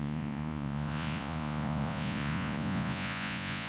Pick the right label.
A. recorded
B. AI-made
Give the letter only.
B